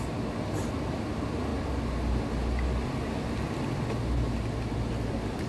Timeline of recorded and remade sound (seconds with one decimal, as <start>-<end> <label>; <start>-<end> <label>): 0.0-5.5 recorded